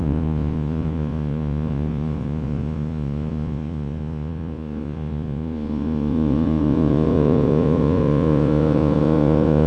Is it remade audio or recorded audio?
remade